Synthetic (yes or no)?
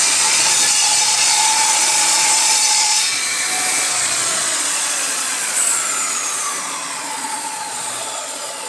yes